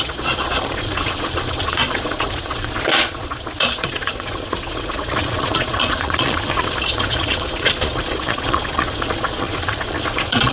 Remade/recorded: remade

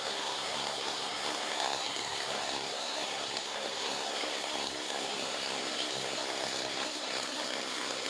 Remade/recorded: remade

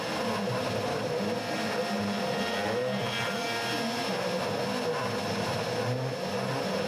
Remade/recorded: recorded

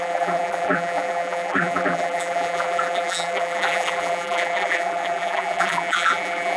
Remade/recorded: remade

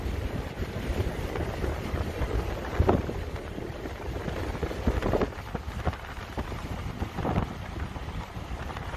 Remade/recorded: recorded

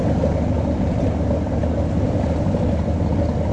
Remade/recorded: recorded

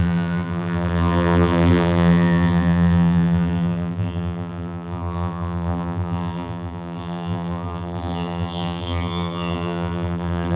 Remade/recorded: remade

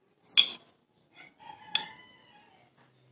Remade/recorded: recorded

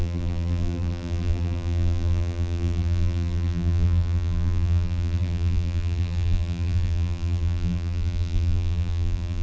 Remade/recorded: remade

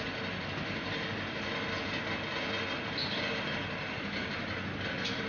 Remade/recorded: recorded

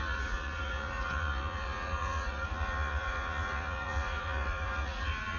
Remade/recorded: remade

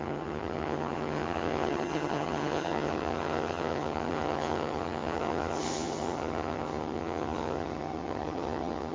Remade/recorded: remade